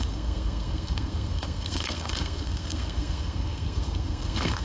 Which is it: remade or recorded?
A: remade